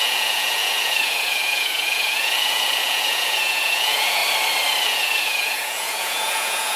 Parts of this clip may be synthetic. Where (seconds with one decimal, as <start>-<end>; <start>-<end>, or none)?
0.0-4.2; 4.8-6.8